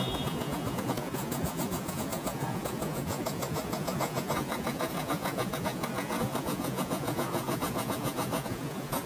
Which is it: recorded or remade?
remade